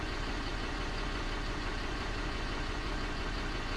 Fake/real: fake